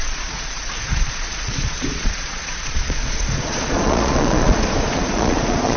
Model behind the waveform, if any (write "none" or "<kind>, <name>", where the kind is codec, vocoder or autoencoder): vocoder, Vocos